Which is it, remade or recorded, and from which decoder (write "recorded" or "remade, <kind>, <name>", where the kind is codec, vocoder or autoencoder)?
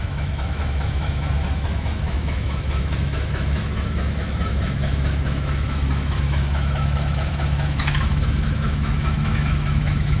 remade, autoencoder, DAC-VAE